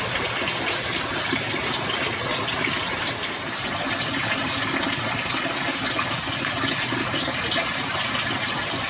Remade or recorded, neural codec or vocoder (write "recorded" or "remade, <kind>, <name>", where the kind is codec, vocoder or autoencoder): recorded